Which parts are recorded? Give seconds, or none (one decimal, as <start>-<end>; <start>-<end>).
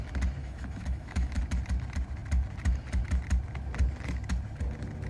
0.0-0.4; 1.4-5.1